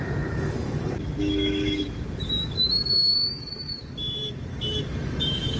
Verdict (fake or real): fake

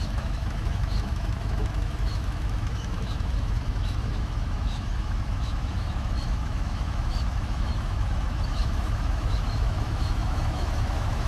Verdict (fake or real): fake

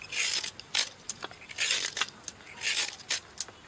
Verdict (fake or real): real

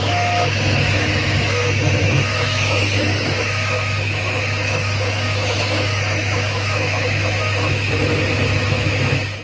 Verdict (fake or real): fake